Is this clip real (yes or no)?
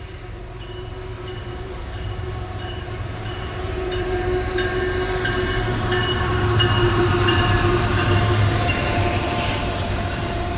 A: no